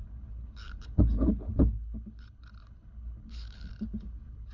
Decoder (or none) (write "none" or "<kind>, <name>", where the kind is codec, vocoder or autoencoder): codec, HILCodec